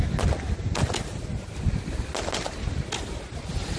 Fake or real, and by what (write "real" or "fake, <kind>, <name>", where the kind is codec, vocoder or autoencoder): real